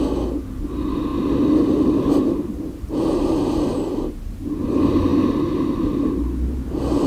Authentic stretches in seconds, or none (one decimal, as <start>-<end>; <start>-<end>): 0.0-7.1